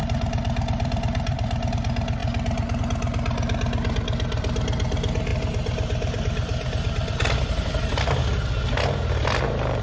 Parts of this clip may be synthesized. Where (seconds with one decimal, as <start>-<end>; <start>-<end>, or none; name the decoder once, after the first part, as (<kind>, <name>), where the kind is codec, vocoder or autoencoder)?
0.0-1.7 (vocoder, BigVGAN v2); 5.3-8.2